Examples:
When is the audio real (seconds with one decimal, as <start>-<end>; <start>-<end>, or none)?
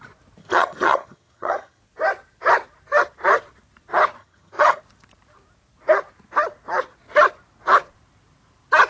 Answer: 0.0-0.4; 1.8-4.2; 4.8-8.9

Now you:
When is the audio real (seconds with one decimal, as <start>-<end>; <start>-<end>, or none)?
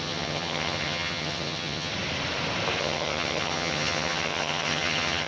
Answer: 1.9-2.8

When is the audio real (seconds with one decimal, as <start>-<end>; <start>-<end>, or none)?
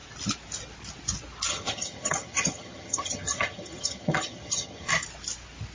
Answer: 0.0-1.5; 4.9-5.7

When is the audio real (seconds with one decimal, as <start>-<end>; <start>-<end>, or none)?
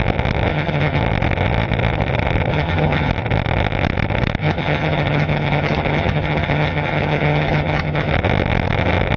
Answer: 0.0-0.5; 1.0-2.5; 3.1-4.4; 8.1-9.2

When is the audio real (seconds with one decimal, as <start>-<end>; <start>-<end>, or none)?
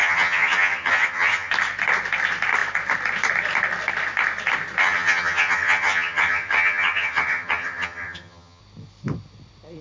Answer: 1.5-4.8; 8.6-9.8